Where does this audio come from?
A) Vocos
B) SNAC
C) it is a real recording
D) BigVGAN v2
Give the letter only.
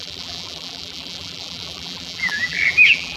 D